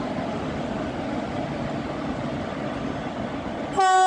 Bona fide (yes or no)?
yes